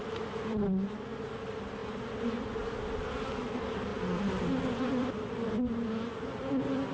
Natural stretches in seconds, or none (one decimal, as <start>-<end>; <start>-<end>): 0.0-6.9